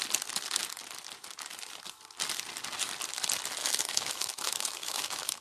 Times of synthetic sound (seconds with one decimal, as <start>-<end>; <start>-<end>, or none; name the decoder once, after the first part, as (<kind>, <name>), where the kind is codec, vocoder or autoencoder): 3.6-5.4 (autoencoder, DAC-VAE)